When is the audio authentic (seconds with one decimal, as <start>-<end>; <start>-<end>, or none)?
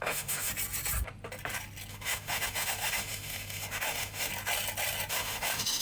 0.5-1.9; 4.3-5.1